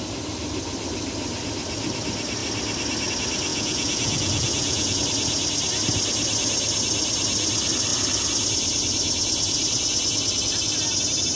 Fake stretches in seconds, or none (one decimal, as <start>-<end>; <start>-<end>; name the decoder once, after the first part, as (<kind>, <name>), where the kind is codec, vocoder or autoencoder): 3.5-5.0 (vocoder, Vocos)

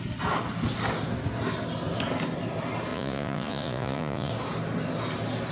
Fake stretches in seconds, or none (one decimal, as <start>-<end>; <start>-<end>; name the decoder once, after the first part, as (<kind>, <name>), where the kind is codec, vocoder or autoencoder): 2.9-4.3 (vocoder, Vocos)

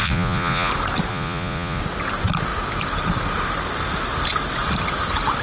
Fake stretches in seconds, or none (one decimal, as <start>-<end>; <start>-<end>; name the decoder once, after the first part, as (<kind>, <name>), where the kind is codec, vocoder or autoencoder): 0.0-0.7 (vocoder, Vocos); 1.1-1.8

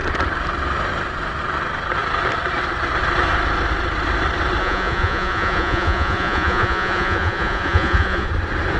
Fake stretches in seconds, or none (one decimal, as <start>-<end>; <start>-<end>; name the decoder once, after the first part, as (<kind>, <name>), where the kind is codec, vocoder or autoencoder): 4.6-8.3 (vocoder, Vocos)

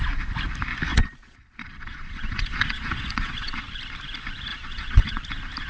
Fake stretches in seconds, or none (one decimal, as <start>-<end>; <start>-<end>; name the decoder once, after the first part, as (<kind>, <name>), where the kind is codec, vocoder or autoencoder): 0.9-3.6 (vocoder, Vocos); 4.5-5.2

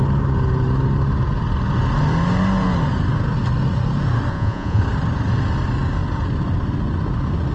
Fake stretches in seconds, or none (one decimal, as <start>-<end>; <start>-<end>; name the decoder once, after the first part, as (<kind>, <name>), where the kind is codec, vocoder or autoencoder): 4.3-4.8 (vocoder, Vocos)

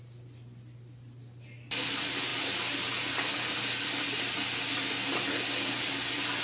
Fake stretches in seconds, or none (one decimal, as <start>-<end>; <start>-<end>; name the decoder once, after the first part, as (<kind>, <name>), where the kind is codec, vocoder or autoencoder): none